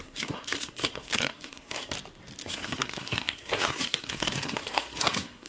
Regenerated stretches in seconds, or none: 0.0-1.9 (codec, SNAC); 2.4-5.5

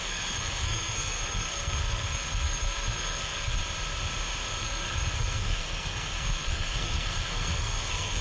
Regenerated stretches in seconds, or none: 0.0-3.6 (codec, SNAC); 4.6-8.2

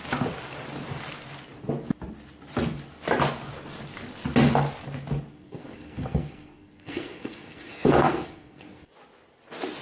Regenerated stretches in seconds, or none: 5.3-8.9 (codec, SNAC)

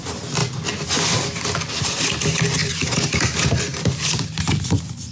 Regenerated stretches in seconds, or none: none